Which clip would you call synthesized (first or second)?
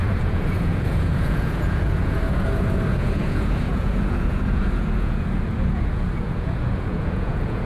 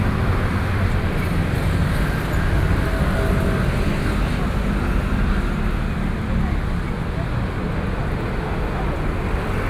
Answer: first